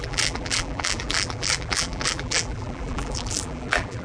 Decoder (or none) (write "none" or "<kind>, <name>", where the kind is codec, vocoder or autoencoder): vocoder, BigVGAN v2